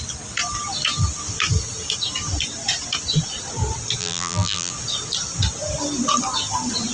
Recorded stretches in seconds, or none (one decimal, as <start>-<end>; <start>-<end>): 0.0-4.0; 4.7-6.9